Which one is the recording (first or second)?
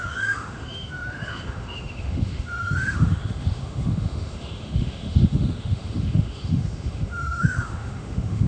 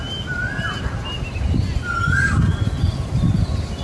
second